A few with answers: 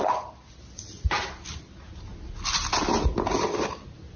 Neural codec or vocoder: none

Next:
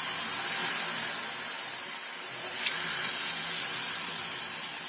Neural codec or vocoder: none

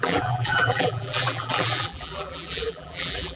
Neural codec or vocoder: vocoder, BigVGAN v2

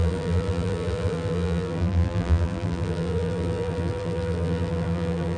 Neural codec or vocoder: vocoder, BigVGAN v2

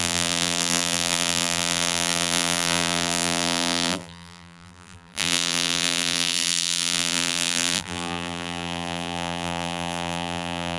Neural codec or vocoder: vocoder, BigVGAN v2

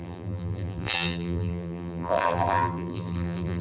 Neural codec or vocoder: vocoder, BigVGAN v2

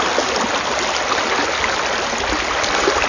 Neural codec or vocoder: none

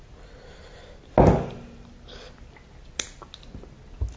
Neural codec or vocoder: none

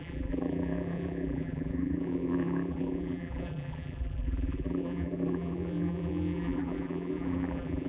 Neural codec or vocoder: vocoder, BigVGAN v2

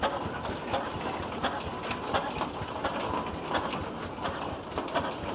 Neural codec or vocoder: none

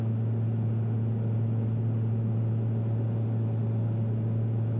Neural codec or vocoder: none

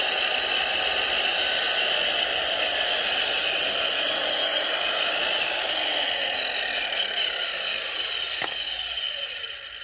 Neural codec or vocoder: none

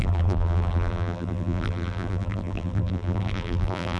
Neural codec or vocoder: vocoder, BigVGAN v2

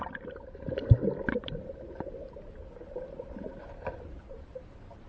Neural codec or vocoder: none